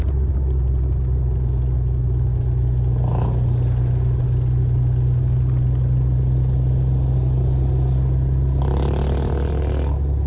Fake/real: real